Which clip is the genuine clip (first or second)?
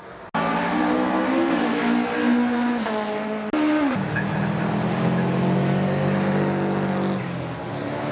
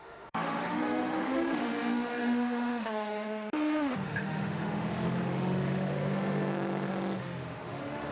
first